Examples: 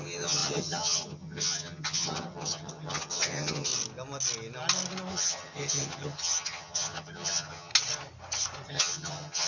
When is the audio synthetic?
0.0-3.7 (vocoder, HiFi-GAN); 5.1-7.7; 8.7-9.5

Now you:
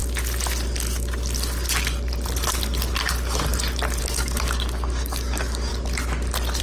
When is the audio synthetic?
4.0-5.7 (codec, DAC)

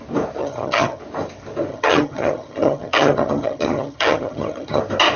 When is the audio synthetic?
0.4-1.0 (vocoder, HiFi-GAN); 1.7-4.8

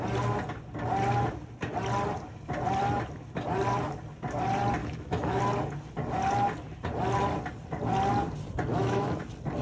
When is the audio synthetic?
4.8-5.4 (autoencoder, DAC-VAE); 8.7-9.2

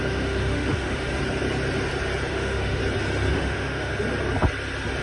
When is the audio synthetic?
0.0-1.2 (autoencoder, DAC-VAE); 2.3-2.8; 3.3-3.9

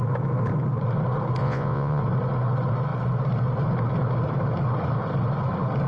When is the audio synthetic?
1.4-2.0 (vocoder, Vocos)

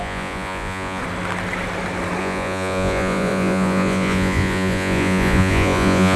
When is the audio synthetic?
0.0-1.0 (vocoder, Vocos); 2.2-6.2

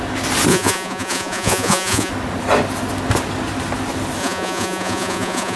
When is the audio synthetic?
0.5-2.1 (vocoder, Vocos); 4.2-5.6